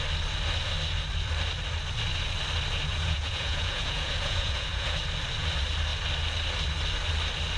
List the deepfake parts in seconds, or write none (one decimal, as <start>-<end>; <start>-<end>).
2.9-5.0